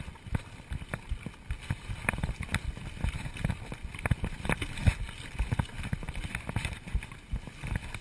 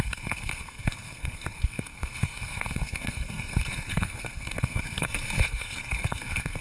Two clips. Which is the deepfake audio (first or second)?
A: second